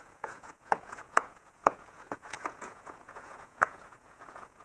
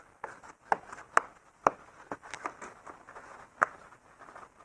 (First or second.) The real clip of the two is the second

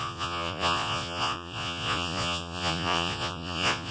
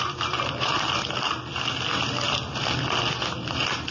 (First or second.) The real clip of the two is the second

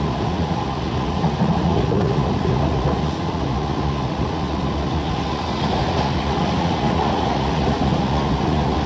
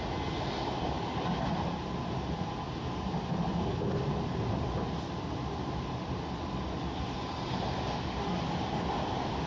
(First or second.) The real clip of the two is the second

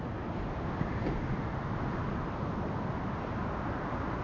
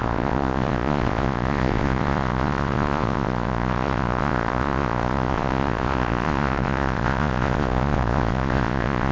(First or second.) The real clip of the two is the first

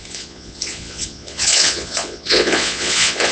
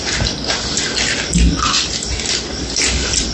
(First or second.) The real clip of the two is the second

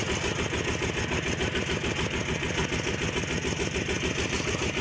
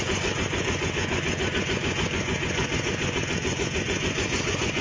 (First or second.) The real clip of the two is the first